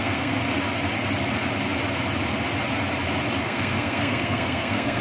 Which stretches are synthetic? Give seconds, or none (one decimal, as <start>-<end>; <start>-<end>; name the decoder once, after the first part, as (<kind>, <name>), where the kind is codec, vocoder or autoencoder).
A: 0.0-0.4 (codec, SNAC); 3.4-5.0